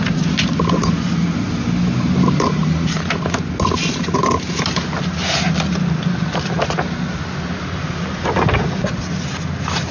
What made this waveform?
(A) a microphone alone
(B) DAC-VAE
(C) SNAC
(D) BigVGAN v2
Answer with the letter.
A